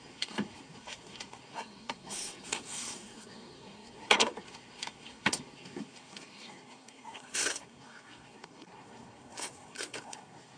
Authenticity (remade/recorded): remade